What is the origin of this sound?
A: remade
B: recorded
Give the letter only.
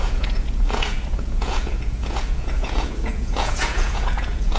A